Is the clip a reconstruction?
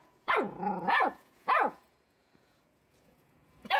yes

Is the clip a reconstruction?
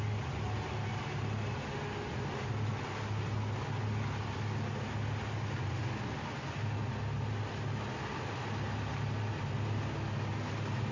no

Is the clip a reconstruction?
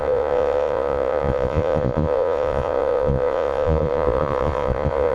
yes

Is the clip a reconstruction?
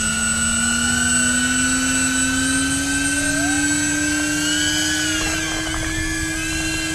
no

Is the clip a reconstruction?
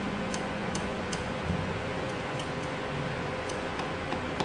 yes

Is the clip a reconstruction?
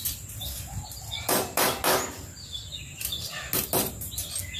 no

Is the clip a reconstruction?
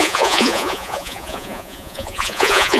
yes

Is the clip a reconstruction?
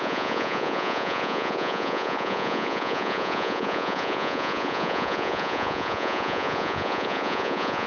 yes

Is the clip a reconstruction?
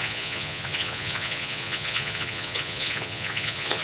yes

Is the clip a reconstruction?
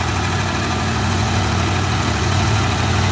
yes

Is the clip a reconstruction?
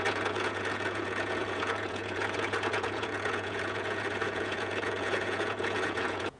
yes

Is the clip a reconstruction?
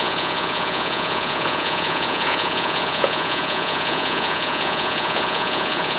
yes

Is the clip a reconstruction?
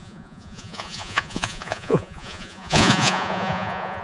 yes